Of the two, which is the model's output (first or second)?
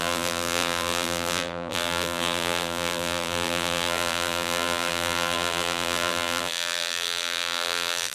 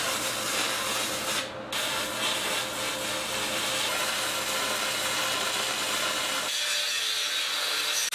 first